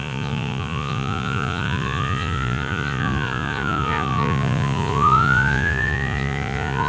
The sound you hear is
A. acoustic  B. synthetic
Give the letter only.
B